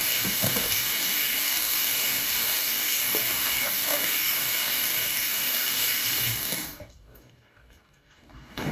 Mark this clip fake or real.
fake